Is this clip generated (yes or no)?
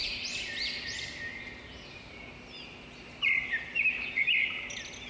no